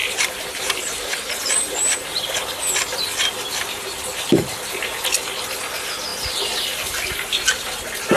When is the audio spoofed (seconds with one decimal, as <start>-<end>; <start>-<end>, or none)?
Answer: 0.0-2.3; 6.1-6.6